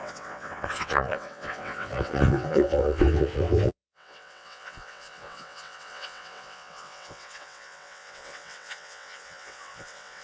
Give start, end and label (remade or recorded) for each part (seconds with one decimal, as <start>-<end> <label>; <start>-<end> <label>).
0.0-10.2 remade